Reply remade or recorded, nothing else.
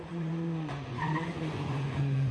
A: remade